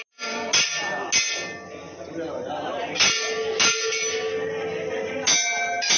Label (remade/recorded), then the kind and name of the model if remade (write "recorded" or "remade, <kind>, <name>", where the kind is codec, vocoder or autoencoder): recorded